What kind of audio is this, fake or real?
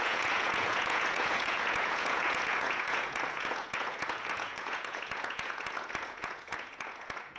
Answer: fake